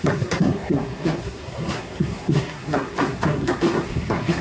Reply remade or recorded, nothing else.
remade